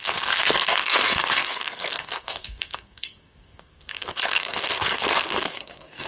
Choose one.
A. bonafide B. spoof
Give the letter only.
B